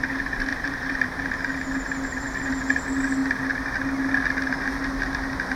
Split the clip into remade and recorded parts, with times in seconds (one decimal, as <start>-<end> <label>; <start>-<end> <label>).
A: 0.0-0.5 recorded; 0.5-1.3 remade; 1.3-5.6 recorded